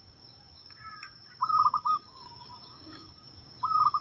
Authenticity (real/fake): fake